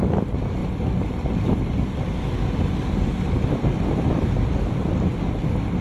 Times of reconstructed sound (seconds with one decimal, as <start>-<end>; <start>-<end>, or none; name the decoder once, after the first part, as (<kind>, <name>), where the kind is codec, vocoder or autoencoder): none